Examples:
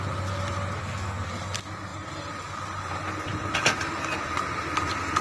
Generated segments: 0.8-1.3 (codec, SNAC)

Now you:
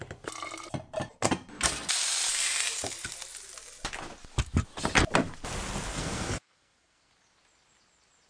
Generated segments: 5.9-7.1 (codec, SNAC)

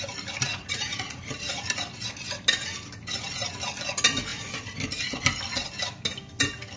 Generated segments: 0.5-1.2 (vocoder, Vocos)